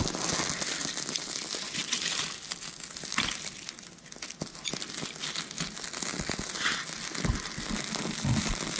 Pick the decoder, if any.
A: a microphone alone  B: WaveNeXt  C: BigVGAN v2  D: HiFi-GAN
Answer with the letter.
A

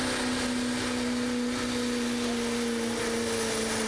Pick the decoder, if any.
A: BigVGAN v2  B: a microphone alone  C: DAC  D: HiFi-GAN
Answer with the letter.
B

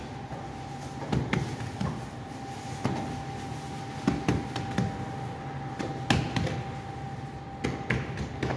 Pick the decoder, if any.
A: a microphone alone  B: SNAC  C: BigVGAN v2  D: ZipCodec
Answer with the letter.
A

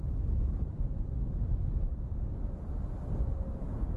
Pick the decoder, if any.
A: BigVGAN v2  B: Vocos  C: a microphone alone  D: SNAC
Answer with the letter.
C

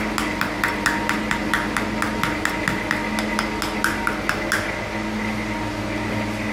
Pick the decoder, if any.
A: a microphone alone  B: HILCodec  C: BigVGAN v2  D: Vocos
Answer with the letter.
A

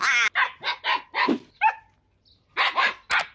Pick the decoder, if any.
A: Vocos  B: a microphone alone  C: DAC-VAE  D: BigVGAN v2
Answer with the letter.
B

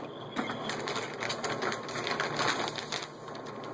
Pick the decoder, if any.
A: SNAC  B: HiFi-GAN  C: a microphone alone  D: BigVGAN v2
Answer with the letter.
C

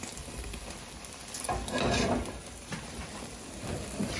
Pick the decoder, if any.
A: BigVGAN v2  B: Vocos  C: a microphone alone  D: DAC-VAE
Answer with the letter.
A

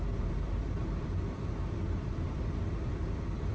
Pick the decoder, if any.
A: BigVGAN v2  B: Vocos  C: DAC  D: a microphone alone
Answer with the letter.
A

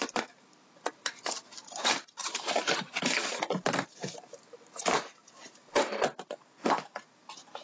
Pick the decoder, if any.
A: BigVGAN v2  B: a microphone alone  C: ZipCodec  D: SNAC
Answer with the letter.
A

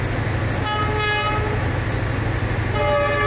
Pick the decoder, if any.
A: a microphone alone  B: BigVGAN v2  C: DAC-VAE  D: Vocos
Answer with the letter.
A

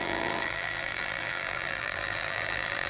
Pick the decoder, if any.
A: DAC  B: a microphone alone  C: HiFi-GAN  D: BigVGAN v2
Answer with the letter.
D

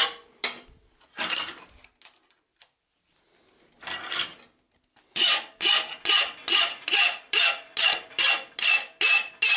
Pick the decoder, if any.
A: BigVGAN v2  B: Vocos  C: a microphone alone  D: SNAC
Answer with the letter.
C